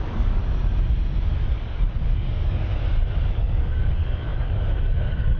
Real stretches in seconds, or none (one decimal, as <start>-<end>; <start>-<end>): 0.4-1.2; 2.8-3.3